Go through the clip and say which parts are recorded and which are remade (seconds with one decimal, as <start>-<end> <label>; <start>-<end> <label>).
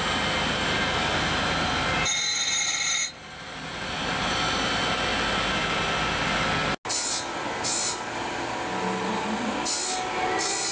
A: 0.0-10.7 recorded